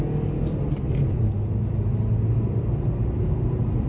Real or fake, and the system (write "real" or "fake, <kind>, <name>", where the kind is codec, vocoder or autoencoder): real